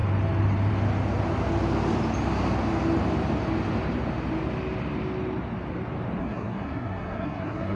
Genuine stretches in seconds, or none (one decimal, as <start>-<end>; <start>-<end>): 0.0-6.2